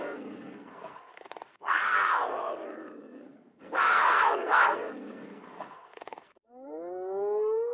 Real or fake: fake